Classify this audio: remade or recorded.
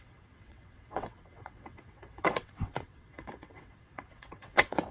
remade